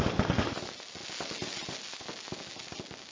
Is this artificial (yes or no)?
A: no